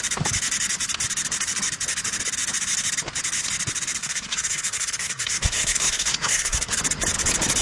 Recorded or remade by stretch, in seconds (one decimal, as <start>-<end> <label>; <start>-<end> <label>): 0.0-4.0 recorded; 4.0-6.7 remade; 6.7-7.6 recorded